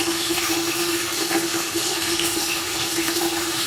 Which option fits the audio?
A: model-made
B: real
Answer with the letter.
A